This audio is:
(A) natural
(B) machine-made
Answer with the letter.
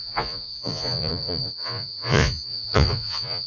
B